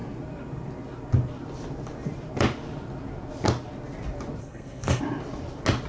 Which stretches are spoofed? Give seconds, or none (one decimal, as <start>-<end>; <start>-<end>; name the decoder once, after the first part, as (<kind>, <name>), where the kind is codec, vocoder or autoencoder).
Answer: 4.4-5.0 (codec, SNAC)